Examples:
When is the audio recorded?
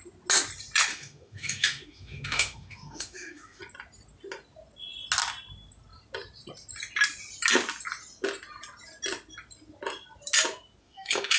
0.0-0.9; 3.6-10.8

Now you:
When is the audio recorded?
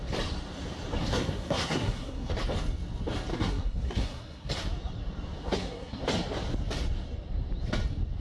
0.0-1.1; 2.3-3.3; 4.5-5.4; 6.0-8.2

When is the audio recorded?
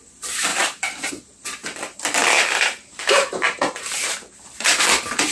0.0-0.5; 1.1-1.6; 4.8-5.3